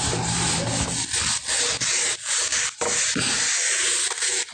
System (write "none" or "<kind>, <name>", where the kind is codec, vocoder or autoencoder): none